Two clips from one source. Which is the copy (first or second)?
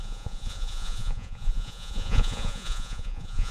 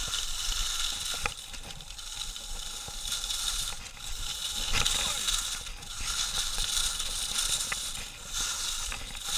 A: first